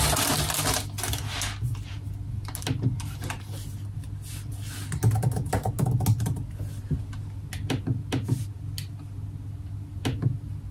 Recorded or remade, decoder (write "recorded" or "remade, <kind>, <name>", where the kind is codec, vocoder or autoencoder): recorded